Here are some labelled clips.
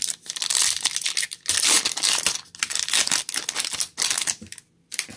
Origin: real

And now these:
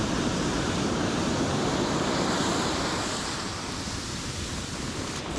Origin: fake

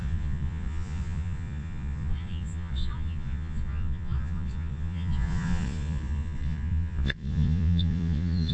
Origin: fake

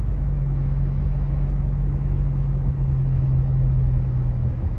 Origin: fake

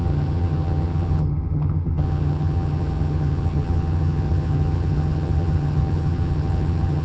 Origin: fake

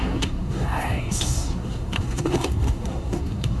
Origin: fake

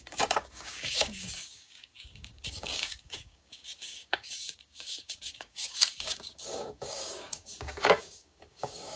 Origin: fake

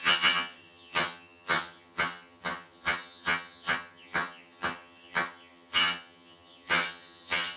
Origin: fake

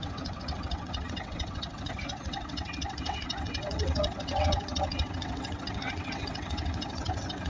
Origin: fake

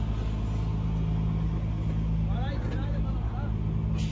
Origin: real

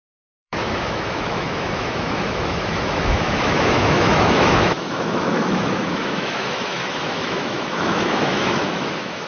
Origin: fake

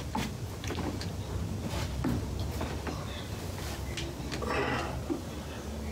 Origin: real